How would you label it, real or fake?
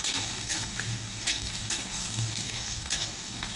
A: fake